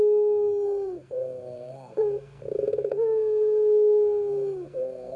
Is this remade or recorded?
remade